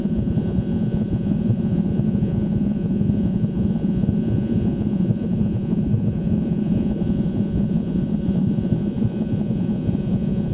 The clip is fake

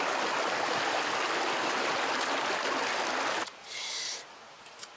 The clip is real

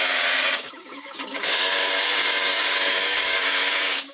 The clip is fake